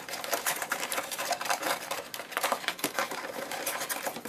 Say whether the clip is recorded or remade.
remade